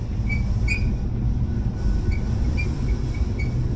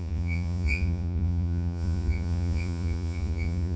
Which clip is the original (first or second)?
first